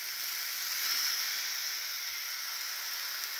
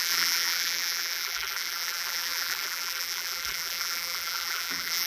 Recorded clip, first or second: first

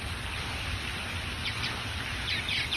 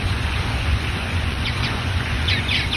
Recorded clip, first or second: first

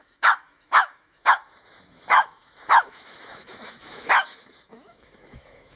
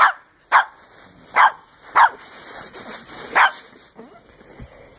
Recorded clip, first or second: second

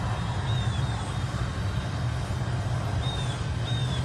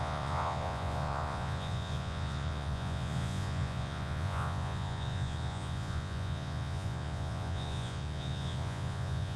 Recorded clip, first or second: first